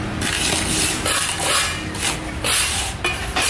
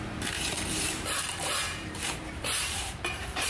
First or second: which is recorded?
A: first